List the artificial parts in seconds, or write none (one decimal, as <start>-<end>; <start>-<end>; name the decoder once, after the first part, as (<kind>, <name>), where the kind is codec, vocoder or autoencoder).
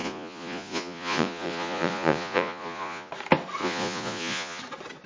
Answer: 0.0-3.1 (vocoder, Vocos); 3.6-4.6